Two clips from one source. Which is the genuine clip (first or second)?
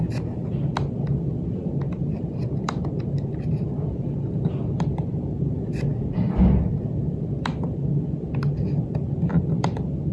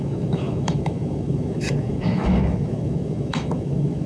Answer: first